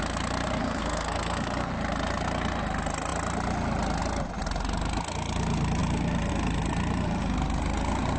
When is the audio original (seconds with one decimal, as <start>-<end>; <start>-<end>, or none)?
0.0-0.6; 1.7-8.2